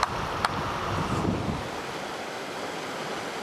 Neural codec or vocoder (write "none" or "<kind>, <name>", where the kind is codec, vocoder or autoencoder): none